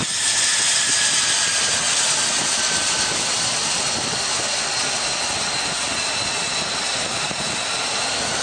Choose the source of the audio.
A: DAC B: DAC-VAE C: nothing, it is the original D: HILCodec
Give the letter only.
C